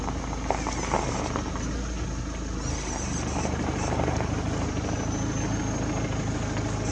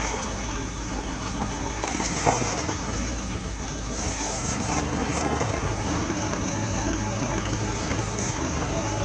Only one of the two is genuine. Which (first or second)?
first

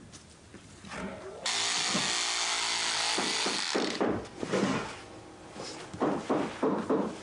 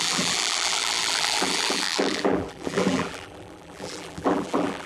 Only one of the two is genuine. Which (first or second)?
first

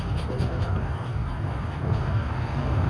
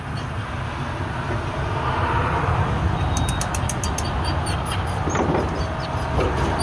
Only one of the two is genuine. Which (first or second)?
second